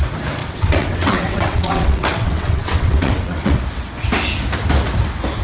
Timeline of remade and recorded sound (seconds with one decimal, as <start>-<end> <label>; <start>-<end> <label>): 0.0-0.4 recorded; 0.4-3.6 remade; 3.6-5.4 recorded

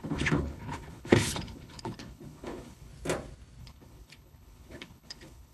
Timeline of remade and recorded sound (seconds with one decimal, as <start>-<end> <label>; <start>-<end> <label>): 0.0-2.9 remade; 2.9-3.6 recorded; 3.6-5.5 remade